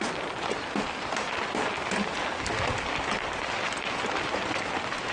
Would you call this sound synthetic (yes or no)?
no